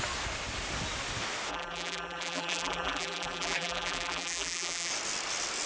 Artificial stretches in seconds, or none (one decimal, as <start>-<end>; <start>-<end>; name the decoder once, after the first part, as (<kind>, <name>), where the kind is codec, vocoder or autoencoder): 1.5-4.9 (vocoder, BigVGAN v2)